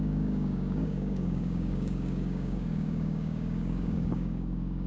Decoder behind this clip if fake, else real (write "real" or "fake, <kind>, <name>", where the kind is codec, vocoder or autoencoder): fake, codec, DAC